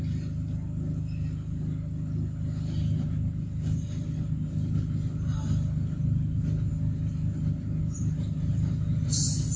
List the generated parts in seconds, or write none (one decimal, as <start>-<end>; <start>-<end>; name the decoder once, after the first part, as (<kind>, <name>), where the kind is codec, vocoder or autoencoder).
none